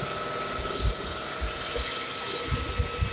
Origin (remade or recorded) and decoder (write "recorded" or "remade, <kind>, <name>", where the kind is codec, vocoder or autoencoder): recorded